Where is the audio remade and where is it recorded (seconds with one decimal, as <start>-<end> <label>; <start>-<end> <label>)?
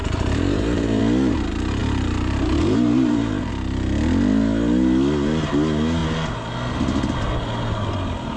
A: 0.0-1.0 remade; 1.0-1.8 recorded; 1.8-3.5 remade; 3.5-8.4 recorded